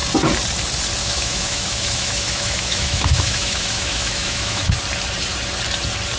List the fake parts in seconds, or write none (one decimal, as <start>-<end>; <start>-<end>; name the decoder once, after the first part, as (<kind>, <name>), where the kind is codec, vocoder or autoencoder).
1.0-4.7 (autoencoder, DAC-VAE)